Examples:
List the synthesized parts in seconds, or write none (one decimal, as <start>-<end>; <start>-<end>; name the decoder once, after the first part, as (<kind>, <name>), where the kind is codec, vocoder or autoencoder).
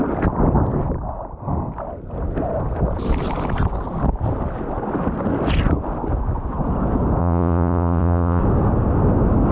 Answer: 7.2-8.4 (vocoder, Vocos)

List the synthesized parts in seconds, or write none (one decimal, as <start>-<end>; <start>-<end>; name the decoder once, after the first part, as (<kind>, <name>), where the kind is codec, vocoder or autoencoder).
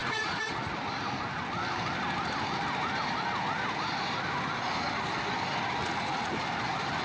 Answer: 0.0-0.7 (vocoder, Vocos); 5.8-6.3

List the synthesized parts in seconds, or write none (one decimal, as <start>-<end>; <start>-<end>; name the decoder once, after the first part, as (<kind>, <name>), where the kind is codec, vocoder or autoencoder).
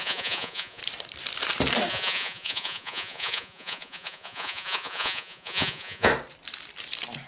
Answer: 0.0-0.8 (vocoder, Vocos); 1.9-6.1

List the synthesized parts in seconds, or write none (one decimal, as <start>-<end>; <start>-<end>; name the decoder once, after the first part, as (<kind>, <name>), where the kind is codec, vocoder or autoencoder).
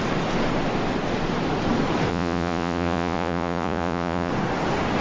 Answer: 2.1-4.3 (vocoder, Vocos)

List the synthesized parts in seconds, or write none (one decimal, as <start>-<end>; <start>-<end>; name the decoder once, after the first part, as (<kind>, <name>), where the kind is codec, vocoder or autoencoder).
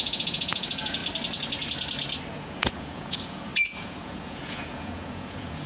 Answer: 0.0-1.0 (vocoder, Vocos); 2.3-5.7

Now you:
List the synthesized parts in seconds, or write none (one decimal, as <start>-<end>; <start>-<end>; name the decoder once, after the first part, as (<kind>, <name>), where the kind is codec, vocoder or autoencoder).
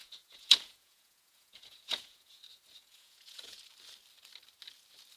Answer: 0.0-2.4 (vocoder, Vocos); 2.8-3.6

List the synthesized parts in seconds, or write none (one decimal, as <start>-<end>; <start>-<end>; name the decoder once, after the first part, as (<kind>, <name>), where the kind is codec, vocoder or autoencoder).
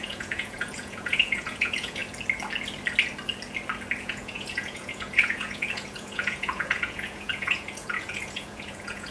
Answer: 0.0-2.0 (vocoder, Vocos); 4.0-9.1